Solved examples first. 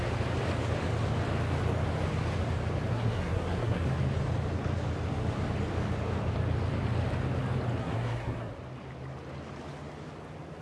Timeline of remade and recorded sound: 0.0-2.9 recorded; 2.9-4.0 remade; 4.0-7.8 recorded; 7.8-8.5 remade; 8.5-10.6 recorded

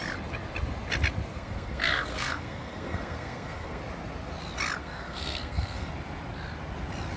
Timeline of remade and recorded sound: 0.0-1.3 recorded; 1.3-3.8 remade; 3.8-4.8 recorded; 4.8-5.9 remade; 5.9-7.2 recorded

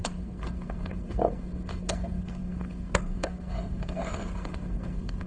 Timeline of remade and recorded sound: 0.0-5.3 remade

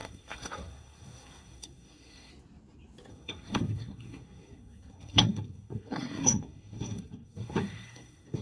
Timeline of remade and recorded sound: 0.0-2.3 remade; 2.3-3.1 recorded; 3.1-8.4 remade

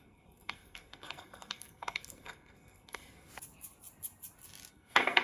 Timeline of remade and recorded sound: 0.0-3.3 remade; 3.3-4.7 recorded; 4.7-5.2 remade

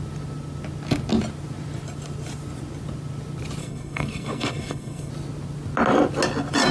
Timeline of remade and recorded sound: 0.0-3.6 recorded; 3.6-5.1 remade; 5.1-6.7 recorded

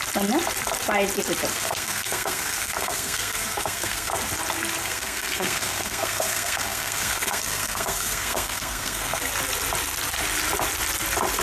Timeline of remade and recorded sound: 0.0-1.5 recorded; 1.5-4.1 remade; 4.1-4.8 recorded; 4.8-9.2 remade; 9.2-11.4 recorded

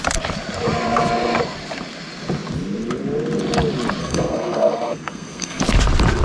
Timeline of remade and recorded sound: 0.0-4.0 recorded; 4.0-5.6 remade; 5.6-6.2 recorded